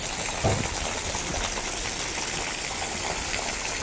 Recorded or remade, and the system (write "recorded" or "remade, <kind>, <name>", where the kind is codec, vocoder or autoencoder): recorded